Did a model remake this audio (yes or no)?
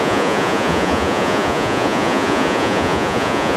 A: yes